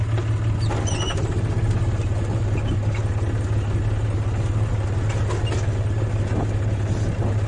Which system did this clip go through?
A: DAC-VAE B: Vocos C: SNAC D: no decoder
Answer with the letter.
D